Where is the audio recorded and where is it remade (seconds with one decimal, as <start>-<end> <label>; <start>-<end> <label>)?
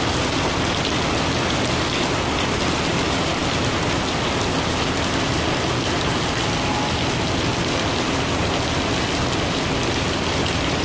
0.0-10.8 recorded